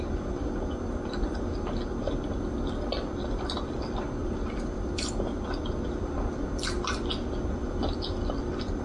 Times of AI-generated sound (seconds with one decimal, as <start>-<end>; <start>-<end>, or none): none